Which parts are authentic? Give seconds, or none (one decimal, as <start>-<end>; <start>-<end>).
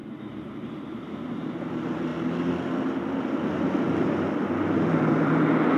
2.1-5.8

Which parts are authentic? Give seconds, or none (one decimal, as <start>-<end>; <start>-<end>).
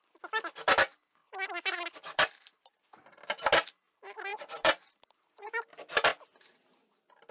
0.0-7.3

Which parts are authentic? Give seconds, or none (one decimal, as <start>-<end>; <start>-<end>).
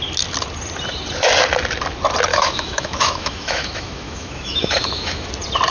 0.0-2.3; 5.3-5.7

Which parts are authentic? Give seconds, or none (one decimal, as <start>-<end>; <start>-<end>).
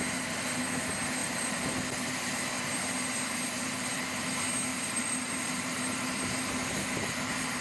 0.0-1.2; 1.7-4.7; 5.8-7.6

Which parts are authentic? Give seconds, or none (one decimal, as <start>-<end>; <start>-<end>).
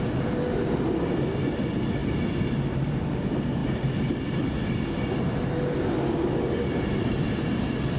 0.0-8.0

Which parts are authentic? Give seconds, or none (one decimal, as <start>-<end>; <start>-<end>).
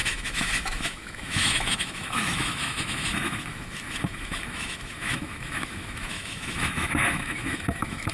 none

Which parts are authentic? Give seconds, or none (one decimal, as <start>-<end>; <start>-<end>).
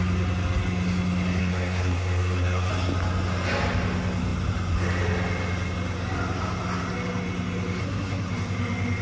0.0-1.4; 2.7-7.8; 8.3-9.0